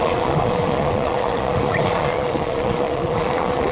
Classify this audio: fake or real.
fake